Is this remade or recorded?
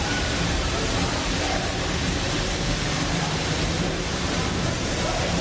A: remade